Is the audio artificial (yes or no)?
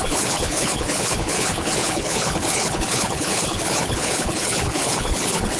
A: yes